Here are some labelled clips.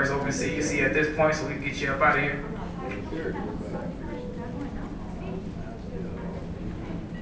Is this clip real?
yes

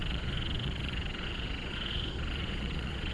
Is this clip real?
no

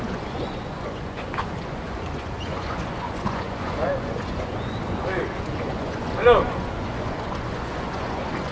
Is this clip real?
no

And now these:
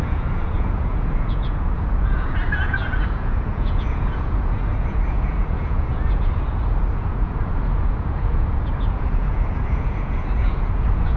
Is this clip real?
no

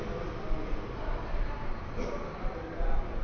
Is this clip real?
yes